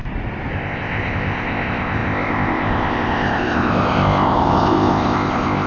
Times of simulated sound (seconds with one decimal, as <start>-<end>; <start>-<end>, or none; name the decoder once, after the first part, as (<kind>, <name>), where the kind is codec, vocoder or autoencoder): 0.5-5.7 (codec, ZipCodec)